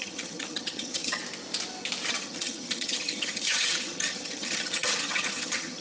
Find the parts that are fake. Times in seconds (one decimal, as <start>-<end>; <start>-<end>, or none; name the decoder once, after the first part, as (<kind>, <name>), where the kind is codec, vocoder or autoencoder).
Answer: 0.0-1.2 (vocoder, HiFi-GAN); 2.1-5.8